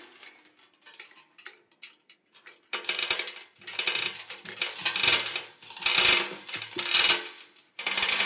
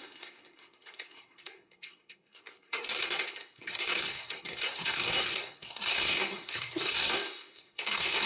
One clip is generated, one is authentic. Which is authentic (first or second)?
first